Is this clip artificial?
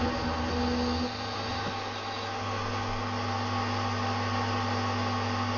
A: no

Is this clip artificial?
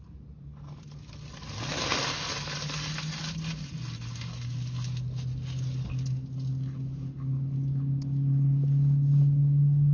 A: no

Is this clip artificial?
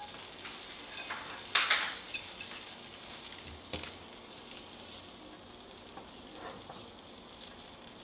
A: no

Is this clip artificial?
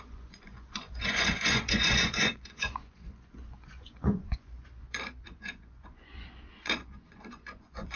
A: yes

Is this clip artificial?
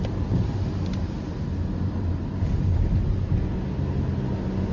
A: no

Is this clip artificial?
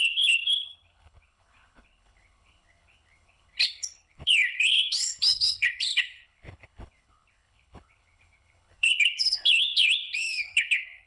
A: yes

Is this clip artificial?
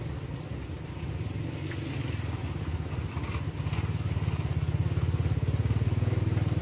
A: no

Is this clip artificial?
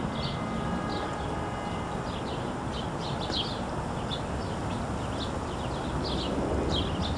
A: no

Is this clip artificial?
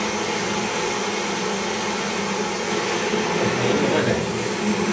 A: no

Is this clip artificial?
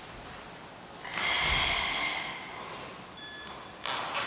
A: no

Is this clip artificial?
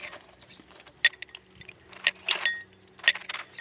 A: no